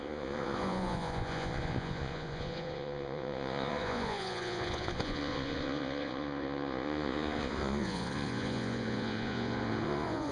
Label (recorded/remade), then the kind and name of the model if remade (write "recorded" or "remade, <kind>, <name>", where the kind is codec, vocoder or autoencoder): remade, vocoder, Vocos